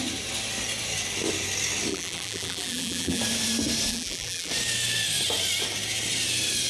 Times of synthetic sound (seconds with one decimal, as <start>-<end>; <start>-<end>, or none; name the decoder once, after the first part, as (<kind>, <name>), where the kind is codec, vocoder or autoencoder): 1.9-3.2 (vocoder, BigVGAN v2); 3.9-4.5